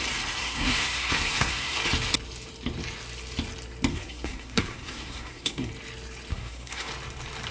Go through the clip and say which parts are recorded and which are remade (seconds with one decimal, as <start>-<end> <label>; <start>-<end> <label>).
0.0-0.4 recorded; 0.4-1.8 remade; 1.8-3.9 recorded; 3.9-5.7 remade; 5.7-6.3 recorded; 6.3-6.9 remade; 6.9-7.5 recorded